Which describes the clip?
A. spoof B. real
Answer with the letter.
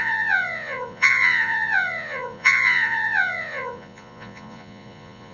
A